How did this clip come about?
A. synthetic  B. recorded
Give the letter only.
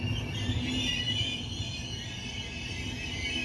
B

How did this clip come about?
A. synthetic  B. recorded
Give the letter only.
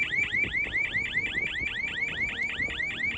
B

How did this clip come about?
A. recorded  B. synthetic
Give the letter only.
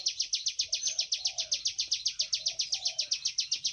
A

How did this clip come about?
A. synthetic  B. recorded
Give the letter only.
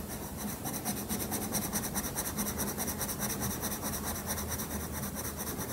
B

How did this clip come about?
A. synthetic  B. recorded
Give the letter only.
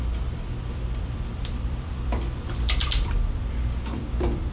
A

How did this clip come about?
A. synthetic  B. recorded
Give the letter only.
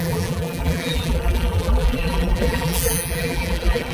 A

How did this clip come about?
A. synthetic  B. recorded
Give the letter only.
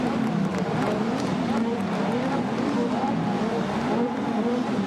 A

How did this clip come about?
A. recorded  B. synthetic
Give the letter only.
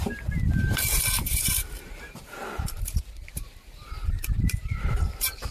B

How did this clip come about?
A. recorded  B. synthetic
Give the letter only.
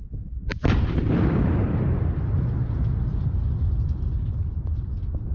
B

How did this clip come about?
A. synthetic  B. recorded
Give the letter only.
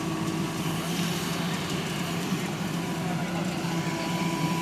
A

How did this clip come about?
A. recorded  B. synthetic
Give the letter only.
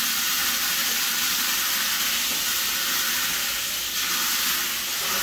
A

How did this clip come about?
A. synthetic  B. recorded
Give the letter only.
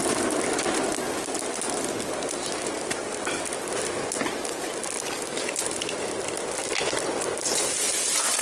B